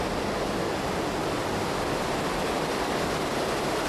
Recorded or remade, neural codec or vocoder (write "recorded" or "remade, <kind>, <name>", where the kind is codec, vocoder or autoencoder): recorded